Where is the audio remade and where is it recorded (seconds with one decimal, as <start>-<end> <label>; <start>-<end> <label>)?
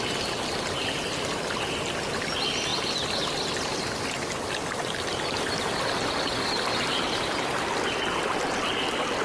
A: 0.0-9.2 recorded